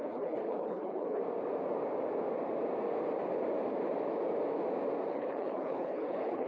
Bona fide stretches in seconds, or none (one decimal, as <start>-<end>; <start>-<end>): 1.2-5.1